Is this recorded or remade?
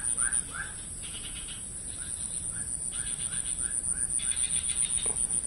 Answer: recorded